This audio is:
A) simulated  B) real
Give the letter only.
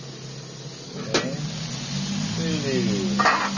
B